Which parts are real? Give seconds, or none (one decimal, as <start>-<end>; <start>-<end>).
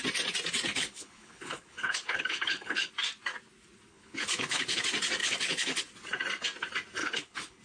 0.0-0.7; 2.9-3.9; 4.8-5.2; 5.8-7.0